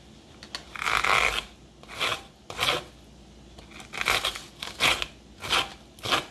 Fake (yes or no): no